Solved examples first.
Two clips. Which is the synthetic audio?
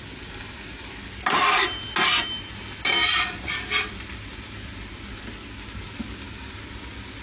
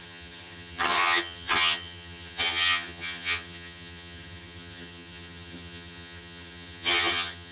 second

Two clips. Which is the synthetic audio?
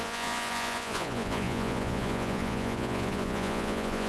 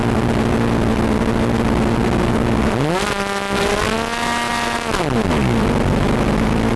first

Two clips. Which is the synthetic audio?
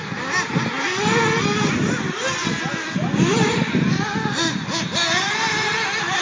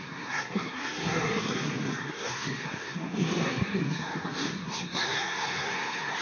second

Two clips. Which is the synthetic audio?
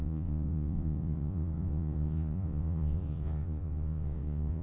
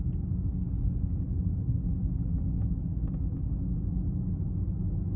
first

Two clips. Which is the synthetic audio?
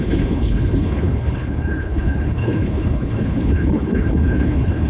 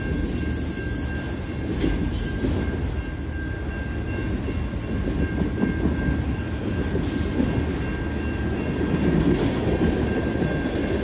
first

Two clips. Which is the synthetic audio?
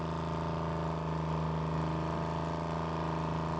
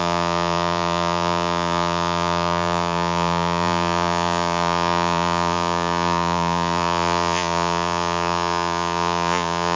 second